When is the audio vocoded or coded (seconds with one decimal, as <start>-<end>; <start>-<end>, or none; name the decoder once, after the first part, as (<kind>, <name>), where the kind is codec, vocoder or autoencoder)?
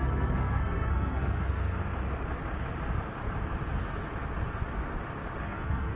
0.0-1.8 (codec, SNAC); 5.4-6.0